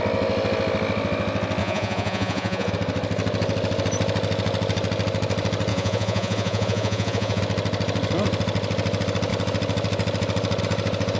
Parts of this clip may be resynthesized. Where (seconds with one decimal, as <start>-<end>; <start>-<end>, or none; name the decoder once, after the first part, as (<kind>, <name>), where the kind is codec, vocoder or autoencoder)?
1.6-2.7 (vocoder, Vocos); 5.7-7.4